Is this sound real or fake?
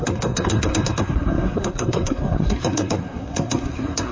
fake